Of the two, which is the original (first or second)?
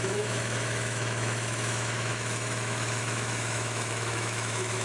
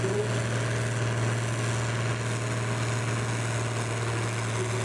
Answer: second